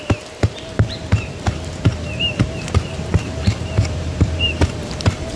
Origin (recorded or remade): remade